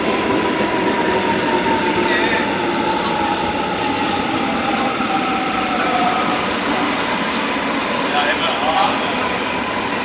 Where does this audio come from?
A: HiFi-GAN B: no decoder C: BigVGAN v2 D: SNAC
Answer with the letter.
B